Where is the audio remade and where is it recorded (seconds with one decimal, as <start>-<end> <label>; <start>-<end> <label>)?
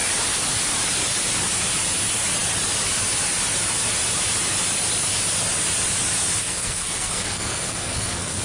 0.0-6.4 recorded; 6.4-8.4 remade